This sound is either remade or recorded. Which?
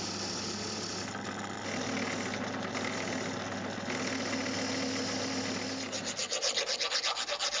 recorded